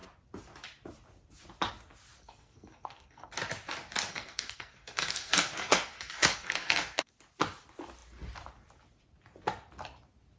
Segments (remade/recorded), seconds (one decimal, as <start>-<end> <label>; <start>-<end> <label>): 0.0-2.2 recorded; 2.2-3.3 remade; 3.3-4.1 recorded; 4.1-7.1 remade; 7.1-10.4 recorded